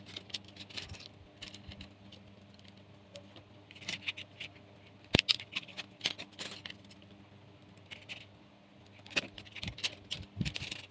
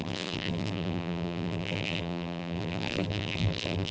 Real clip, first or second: first